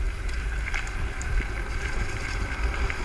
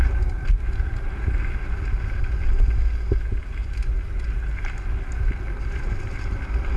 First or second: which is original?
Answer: second